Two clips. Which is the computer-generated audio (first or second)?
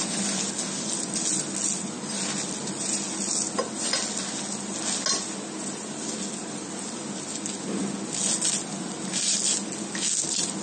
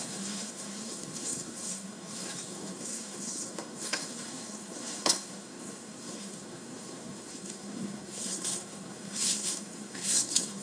second